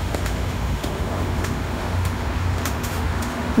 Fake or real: fake